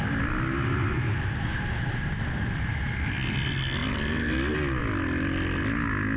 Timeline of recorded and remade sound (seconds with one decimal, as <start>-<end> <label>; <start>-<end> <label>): 0.0-6.2 recorded